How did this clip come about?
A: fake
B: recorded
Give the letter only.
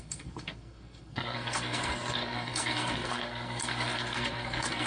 A